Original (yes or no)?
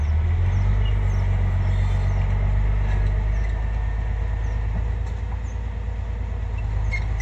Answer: yes